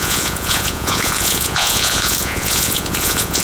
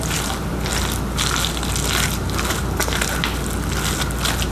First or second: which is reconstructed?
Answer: first